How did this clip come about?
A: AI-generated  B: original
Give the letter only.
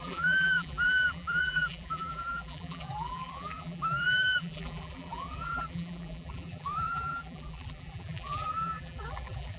A